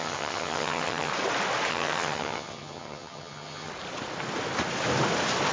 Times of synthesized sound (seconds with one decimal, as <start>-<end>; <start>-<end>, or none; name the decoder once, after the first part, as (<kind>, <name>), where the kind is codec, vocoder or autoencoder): 0.0-1.1 (vocoder, HiFi-GAN); 1.7-3.7